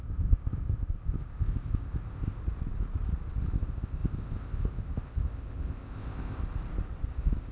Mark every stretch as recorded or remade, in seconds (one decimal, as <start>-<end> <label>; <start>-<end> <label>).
0.0-2.4 remade; 2.4-3.6 recorded; 3.6-6.4 remade; 6.4-7.1 recorded; 7.1-7.5 remade